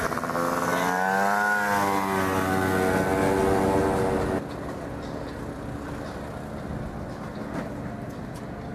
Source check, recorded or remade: recorded